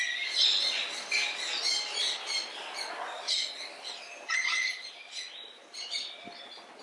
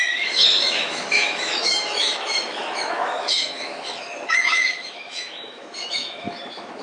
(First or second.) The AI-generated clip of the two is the second